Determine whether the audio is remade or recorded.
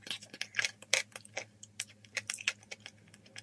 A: recorded